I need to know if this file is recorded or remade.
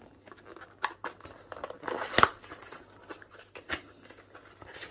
recorded